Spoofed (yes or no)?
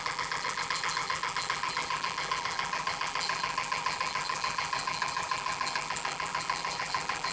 yes